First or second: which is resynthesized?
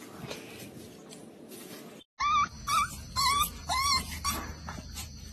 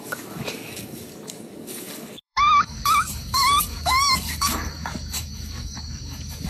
second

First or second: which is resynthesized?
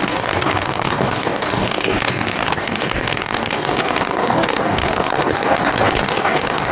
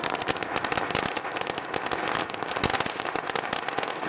first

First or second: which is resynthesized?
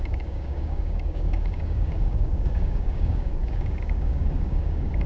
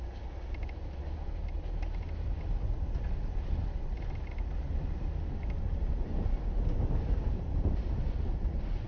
first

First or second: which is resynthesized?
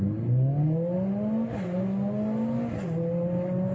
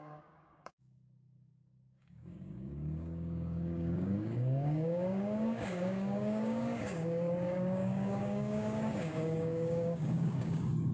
second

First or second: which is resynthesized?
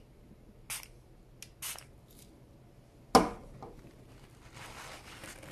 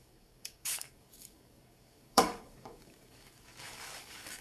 second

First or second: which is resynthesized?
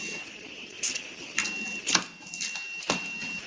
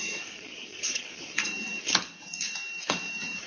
second